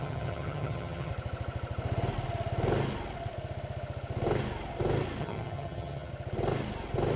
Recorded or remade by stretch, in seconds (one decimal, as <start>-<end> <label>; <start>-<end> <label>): 0.0-1.1 remade; 1.1-5.2 recorded; 5.2-6.1 remade; 6.1-7.2 recorded